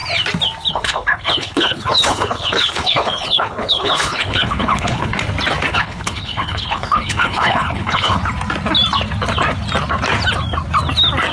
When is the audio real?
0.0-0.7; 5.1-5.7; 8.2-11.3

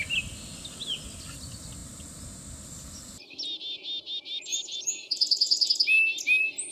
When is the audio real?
0.0-4.5; 5.7-6.7

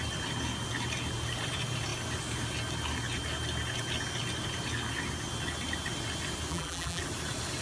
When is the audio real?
0.0-6.5; 7.0-7.6

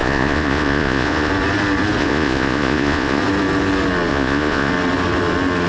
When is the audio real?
1.3-2.0; 3.2-4.1; 4.7-5.7

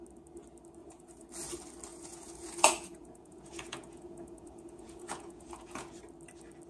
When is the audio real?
0.0-0.8; 1.3-1.9; 5.9-6.7

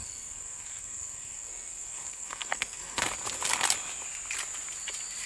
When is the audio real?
3.0-5.3

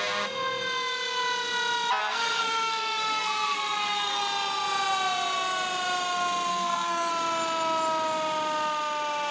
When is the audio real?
0.0-2.0; 4.2-6.5; 7.1-9.3